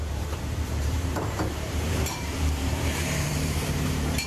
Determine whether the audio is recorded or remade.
remade